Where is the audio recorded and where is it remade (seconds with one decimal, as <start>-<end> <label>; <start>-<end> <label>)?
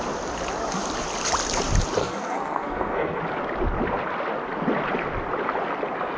0.0-2.0 recorded; 2.0-3.2 remade; 3.2-6.2 recorded